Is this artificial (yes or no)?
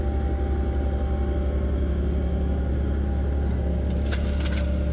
no